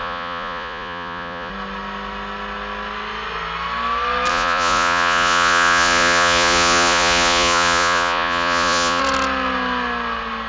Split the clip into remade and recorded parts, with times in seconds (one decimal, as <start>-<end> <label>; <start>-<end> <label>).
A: 0.0-1.5 remade; 1.5-4.3 recorded; 4.3-9.0 remade; 9.0-10.5 recorded